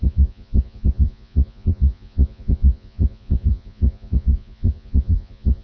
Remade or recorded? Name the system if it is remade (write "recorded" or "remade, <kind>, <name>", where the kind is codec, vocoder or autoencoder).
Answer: remade, vocoder, Vocos